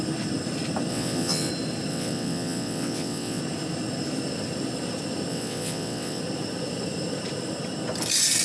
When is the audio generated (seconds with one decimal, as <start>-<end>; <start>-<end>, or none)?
0.9-1.5; 1.9-3.4; 5.3-6.2